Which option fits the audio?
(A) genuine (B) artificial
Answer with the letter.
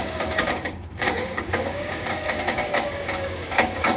B